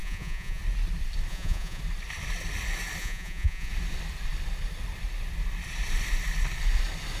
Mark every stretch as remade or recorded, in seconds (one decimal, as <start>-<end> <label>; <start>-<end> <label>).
0.0-0.6 remade; 0.6-1.3 recorded; 1.3-1.8 remade; 1.8-3.0 recorded; 3.0-3.7 remade; 3.7-7.2 recorded